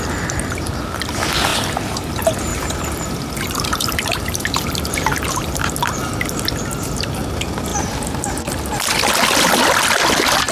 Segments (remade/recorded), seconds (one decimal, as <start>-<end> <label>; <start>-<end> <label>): 0.0-2.5 recorded; 2.5-5.6 remade; 5.6-10.5 recorded